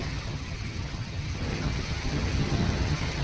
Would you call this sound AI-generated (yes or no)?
yes